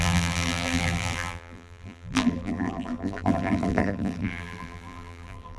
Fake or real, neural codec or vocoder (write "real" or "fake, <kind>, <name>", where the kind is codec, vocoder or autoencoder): fake, vocoder, BigVGAN v2